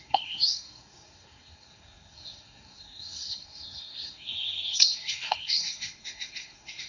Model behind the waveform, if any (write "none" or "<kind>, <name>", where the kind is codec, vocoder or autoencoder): codec, SNAC